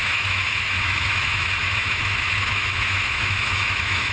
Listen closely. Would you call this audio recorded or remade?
remade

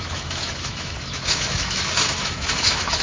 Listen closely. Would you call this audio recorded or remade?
remade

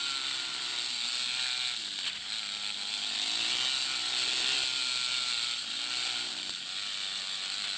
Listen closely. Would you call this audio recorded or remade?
recorded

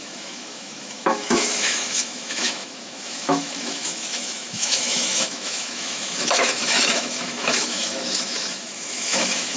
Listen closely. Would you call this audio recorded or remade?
remade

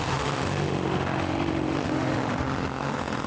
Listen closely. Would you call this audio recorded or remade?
remade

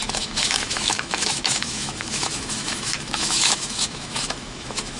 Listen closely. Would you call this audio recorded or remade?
remade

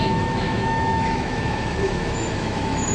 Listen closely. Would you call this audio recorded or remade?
remade